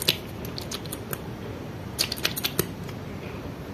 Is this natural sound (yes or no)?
yes